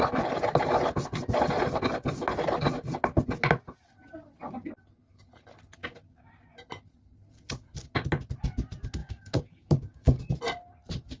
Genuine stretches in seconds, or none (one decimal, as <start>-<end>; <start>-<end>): 0.0-5.8; 6.3-9.0; 10.2-11.2